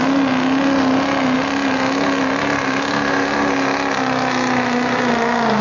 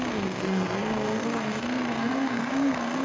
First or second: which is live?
first